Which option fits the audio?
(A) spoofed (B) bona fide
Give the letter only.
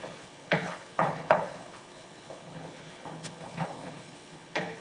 A